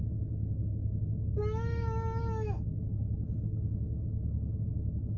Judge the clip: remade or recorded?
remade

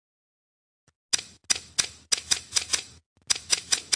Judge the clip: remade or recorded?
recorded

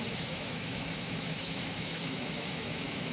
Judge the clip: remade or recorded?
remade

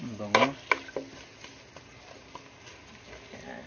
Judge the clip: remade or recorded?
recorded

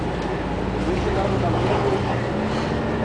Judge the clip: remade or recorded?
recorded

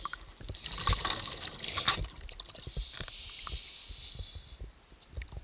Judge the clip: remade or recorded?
recorded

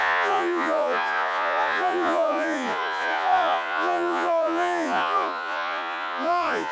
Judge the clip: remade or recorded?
remade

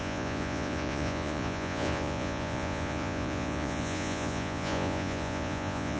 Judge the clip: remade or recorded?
remade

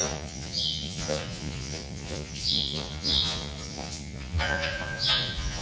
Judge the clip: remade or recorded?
remade